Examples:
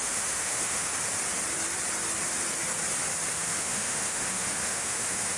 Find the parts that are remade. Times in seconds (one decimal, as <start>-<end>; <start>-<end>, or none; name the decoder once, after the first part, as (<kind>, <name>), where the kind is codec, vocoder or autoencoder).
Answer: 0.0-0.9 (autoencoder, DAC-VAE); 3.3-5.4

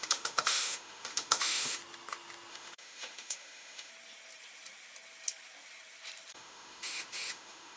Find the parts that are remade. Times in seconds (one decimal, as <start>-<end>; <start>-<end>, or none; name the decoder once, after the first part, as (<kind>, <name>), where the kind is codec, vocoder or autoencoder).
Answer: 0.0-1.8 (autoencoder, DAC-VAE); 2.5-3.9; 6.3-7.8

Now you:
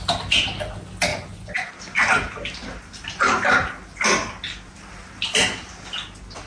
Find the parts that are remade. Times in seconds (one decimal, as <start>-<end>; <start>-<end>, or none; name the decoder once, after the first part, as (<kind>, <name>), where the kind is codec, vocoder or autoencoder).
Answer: 1.1-1.7 (vocoder, Vocos)